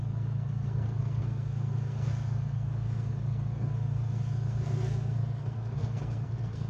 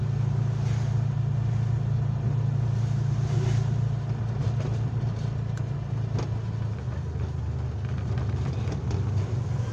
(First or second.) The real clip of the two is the second